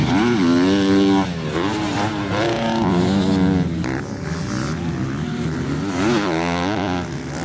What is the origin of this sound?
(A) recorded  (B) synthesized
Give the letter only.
A